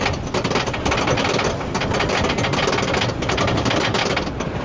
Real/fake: real